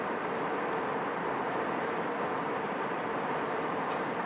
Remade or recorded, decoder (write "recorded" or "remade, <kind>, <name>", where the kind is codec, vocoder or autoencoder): recorded